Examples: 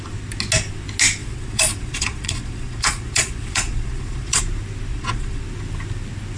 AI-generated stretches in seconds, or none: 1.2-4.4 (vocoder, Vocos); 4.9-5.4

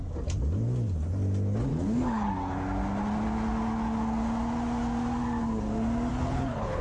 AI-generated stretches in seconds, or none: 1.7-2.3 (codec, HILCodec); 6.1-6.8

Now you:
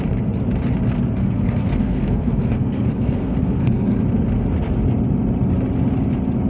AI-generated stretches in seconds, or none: 1.2-4.0 (codec, SNAC)